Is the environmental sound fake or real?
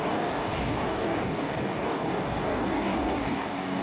fake